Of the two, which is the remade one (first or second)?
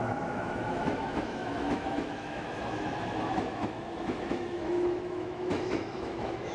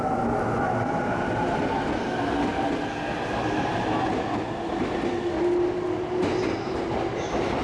first